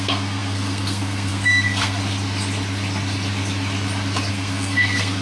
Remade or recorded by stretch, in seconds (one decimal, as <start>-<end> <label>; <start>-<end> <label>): 0.0-2.0 remade; 2.0-4.3 recorded; 4.3-5.2 remade